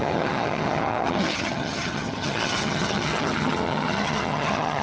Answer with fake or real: fake